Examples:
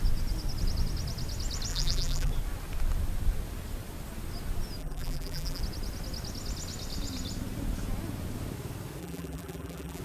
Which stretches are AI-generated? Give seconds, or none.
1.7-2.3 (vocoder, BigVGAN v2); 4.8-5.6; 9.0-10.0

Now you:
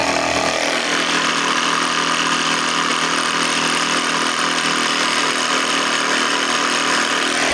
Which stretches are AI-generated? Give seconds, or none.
0.0-1.3 (vocoder, BigVGAN v2); 2.9-7.5

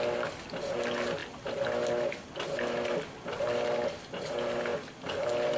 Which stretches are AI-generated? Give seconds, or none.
none

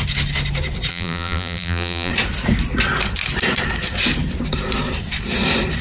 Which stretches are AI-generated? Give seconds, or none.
0.9-2.1 (vocoder, BigVGAN v2)

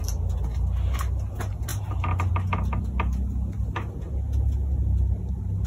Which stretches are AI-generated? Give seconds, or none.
none